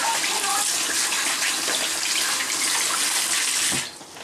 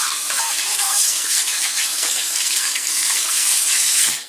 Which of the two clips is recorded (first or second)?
first